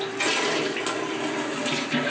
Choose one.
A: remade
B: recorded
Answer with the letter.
B